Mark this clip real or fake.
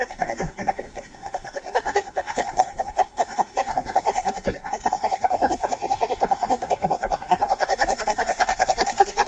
fake